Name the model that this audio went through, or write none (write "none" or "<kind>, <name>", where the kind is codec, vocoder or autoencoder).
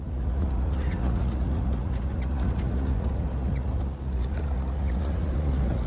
vocoder, Vocos